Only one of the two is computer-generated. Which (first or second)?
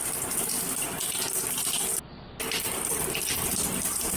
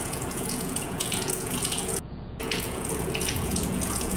second